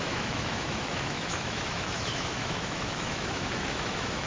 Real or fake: fake